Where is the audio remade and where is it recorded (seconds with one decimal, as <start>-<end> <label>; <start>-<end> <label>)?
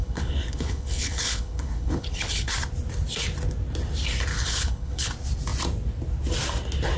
0.0-2.5 remade; 2.5-4.3 recorded; 4.3-5.1 remade; 5.1-7.0 recorded